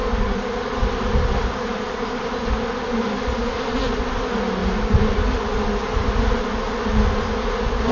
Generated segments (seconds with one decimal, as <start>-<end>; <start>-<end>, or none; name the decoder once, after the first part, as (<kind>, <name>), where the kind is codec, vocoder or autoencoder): none